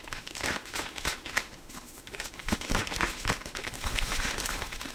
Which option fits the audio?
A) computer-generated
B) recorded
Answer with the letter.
A